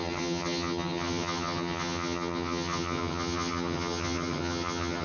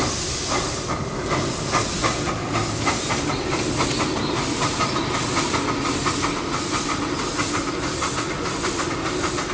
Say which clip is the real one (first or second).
second